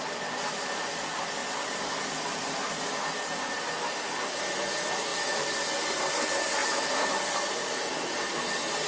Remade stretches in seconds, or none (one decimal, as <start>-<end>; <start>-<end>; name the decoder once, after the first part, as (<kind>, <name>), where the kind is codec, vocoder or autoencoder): none